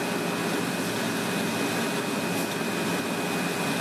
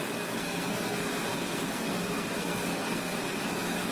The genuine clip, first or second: first